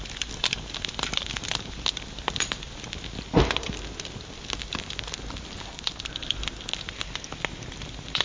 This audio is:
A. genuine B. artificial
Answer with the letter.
A